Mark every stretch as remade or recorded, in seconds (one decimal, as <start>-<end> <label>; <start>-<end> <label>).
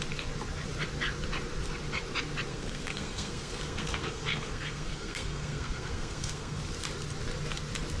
0.0-2.5 recorded; 2.5-6.6 remade; 6.6-8.0 recorded